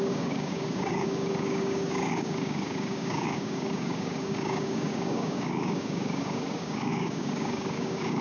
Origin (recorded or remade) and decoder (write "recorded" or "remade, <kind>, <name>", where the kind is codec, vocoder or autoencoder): remade, codec, DAC